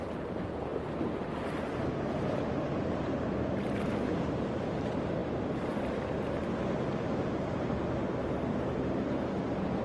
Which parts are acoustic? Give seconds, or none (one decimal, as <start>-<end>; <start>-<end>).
0.0-9.8